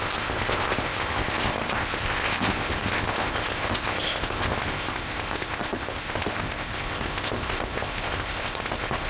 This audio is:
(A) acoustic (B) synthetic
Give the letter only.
B